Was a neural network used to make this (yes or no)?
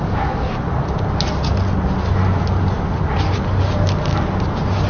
no